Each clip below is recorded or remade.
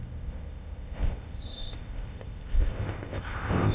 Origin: remade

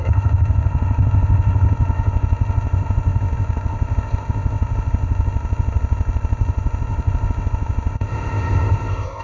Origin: remade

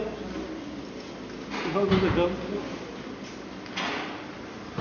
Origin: recorded